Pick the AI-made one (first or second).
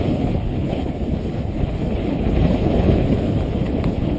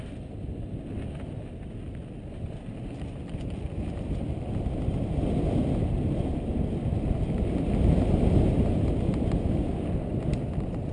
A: first